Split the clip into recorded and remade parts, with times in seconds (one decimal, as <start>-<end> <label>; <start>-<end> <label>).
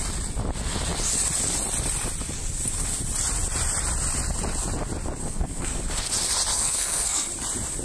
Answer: 0.0-5.2 recorded; 5.2-5.8 remade; 5.8-6.5 recorded; 6.5-7.3 remade; 7.3-7.8 recorded